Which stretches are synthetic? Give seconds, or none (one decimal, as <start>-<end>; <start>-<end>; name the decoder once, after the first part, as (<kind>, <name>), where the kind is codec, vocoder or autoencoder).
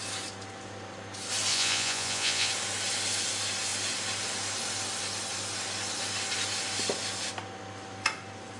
1.5-2.5 (vocoder, Vocos)